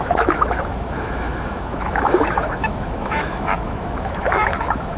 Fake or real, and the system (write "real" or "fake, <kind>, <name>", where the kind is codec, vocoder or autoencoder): fake, autoencoder, DAC-VAE